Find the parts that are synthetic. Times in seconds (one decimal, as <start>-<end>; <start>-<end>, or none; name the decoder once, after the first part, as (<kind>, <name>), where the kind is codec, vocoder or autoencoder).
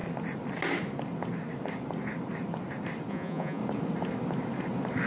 3.1-3.6 (vocoder, Vocos)